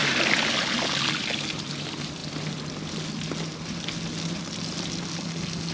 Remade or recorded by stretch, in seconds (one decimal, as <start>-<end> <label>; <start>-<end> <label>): 0.0-5.7 recorded